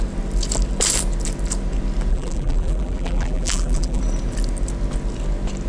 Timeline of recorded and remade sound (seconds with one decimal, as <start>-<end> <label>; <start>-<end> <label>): 0.0-2.1 recorded; 2.1-4.0 remade; 4.0-5.7 recorded